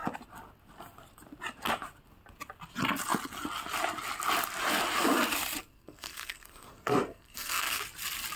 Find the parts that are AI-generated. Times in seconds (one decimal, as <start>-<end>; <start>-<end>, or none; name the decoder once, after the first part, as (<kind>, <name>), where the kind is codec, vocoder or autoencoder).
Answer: 5.6-7.8 (codec, SNAC)